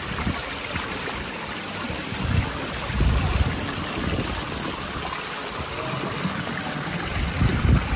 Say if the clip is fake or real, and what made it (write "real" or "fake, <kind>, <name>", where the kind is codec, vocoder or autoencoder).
real